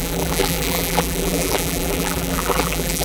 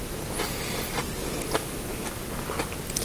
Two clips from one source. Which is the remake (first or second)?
first